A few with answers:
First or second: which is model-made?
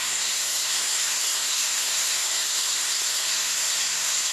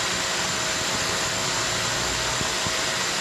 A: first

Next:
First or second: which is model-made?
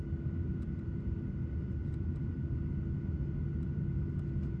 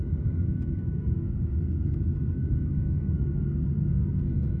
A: second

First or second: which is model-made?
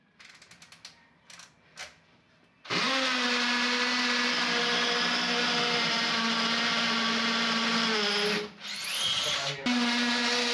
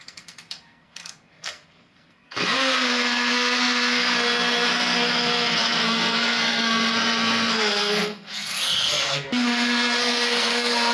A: second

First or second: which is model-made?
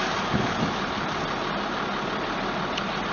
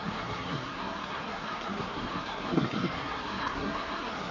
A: second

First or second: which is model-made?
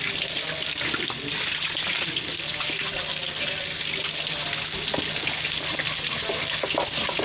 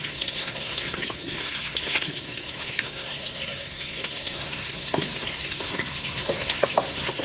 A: second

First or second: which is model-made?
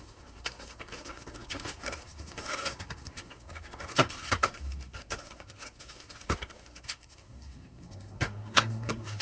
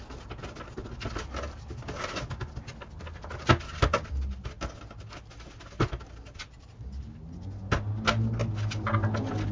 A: first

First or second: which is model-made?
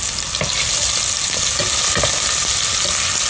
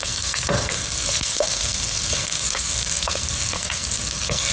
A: second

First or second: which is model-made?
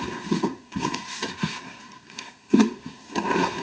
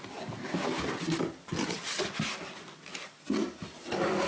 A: first